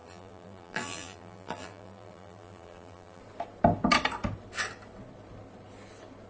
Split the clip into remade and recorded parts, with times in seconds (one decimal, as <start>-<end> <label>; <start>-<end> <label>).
0.0-3.2 remade; 3.2-6.3 recorded

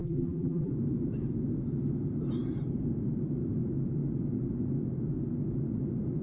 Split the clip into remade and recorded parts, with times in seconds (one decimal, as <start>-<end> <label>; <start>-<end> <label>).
0.0-0.7 remade; 0.7-6.2 recorded